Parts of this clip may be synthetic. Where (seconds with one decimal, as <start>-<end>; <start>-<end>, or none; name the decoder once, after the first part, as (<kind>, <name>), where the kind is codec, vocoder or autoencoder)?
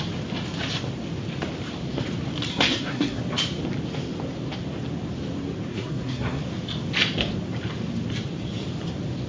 2.5-3.2 (codec, SNAC); 5.7-6.4